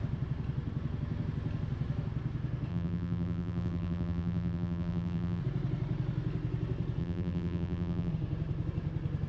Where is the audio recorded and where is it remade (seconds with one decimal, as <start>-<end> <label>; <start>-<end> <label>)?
0.0-2.7 recorded; 2.7-5.4 remade; 5.4-7.0 recorded; 7.0-8.1 remade; 8.1-9.3 recorded